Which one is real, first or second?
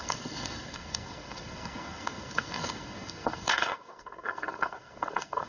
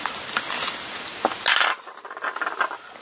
second